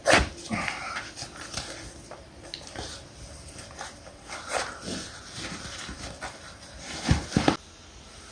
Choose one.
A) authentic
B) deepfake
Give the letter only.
A